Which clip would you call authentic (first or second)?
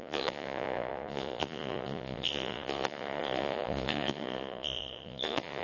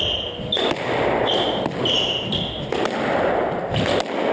second